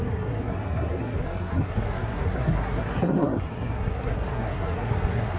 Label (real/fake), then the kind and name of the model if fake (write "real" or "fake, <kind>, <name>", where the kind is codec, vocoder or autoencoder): fake, codec, SNAC